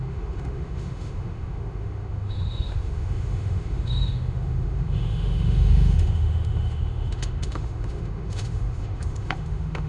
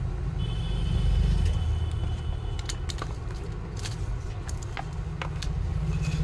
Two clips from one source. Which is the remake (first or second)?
first